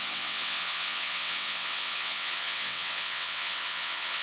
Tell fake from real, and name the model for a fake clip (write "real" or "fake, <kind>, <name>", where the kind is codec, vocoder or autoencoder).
fake, vocoder, WaveNeXt